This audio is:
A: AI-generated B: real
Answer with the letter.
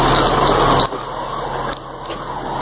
B